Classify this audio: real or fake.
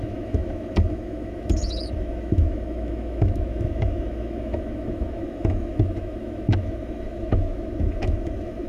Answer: fake